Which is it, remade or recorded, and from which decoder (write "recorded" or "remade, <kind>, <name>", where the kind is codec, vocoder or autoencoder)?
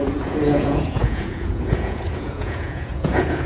remade, vocoder, Vocos